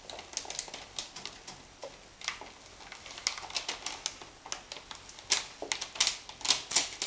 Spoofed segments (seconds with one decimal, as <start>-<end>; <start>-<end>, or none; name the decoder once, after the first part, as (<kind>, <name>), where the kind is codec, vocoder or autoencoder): none